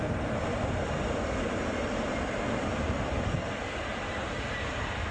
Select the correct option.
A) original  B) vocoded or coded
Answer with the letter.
A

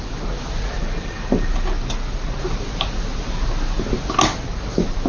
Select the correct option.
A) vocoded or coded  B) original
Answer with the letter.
B